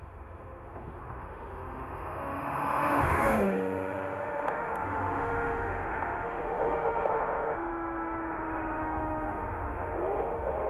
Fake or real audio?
fake